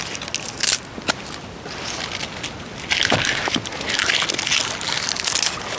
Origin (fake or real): real